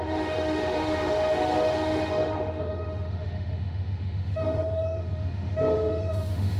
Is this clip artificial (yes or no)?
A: yes